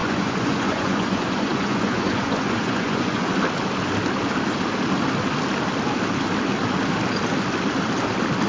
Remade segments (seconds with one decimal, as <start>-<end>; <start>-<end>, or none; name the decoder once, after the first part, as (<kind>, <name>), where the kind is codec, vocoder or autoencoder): 0.0-3.3 (vocoder, Vocos)